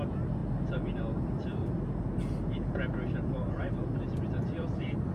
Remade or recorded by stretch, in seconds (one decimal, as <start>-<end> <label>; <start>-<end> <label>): 0.0-5.1 recorded